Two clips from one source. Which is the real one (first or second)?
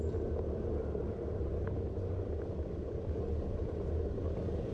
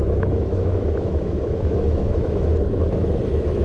first